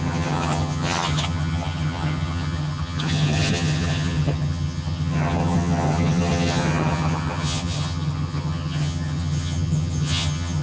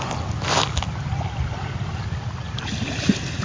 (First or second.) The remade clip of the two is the first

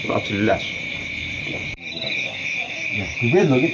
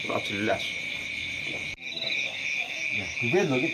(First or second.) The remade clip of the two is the first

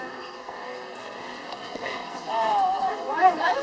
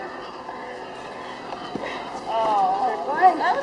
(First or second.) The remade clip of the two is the first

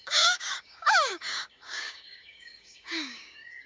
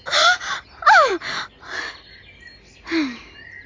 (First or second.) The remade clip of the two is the first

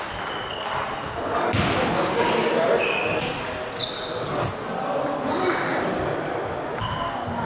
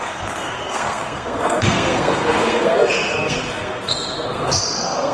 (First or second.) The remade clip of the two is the second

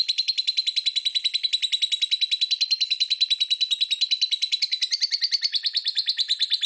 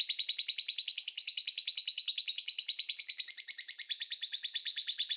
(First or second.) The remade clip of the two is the second